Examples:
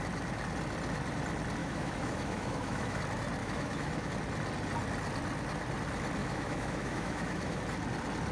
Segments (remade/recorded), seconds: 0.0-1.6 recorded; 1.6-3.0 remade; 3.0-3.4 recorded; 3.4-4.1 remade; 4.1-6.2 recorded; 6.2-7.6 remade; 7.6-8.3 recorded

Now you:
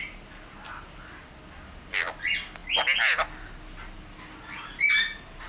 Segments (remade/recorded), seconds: 0.0-5.5 recorded

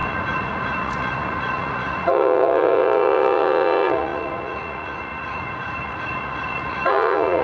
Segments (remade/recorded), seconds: 0.0-7.4 remade

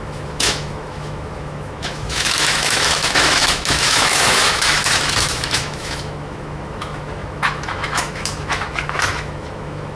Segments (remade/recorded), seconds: 0.0-10.0 remade

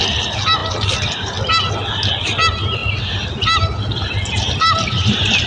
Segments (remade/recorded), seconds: 0.0-5.5 recorded

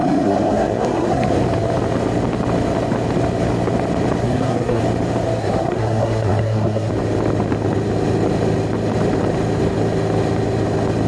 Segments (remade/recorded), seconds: 0.0-1.3 remade; 1.3-4.2 recorded; 4.2-4.8 remade; 4.8-5.4 recorded; 5.4-6.9 remade; 6.9-11.1 recorded

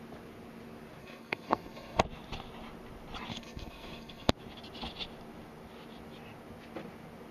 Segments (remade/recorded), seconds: 0.0-1.0 recorded; 1.0-2.0 remade; 2.0-3.3 recorded; 3.3-4.3 remade; 4.3-7.3 recorded